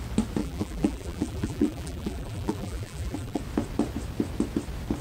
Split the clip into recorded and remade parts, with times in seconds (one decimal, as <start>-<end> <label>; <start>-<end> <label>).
0.0-0.4 recorded; 0.4-3.4 remade; 3.4-5.0 recorded